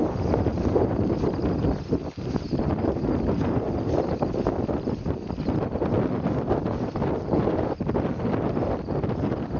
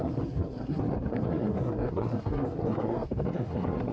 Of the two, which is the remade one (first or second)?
second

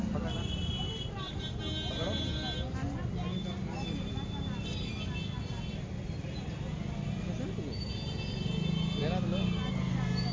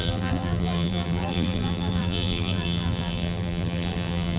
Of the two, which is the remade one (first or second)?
second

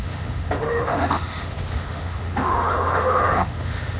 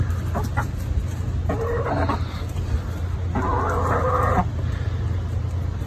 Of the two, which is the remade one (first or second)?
first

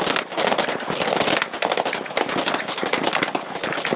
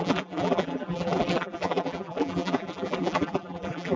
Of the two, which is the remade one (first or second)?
second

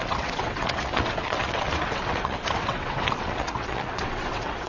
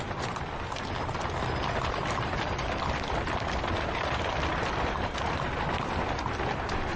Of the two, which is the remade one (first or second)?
first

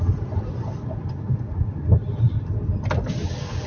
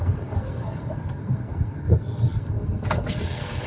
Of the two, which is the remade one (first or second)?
second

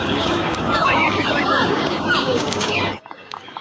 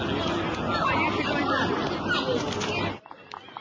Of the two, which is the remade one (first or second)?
first